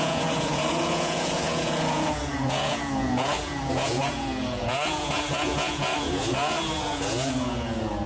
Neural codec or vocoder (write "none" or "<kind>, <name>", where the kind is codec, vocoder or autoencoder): vocoder, Vocos